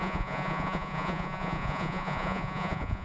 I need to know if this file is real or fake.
fake